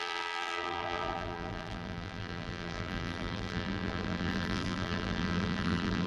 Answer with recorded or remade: remade